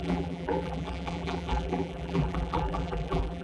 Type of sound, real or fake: fake